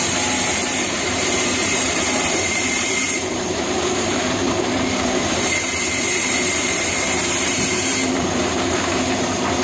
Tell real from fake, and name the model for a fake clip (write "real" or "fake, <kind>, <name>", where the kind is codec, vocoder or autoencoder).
fake, vocoder, BigVGAN v2